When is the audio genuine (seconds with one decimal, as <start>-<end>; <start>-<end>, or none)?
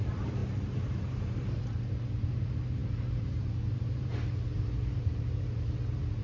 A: none